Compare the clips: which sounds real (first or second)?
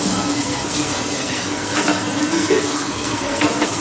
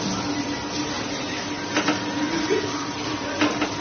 second